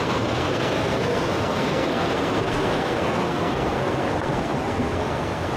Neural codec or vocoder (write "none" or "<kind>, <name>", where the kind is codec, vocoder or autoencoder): codec, SNAC